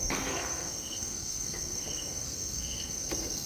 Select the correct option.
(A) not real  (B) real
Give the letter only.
A